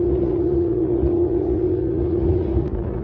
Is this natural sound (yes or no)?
no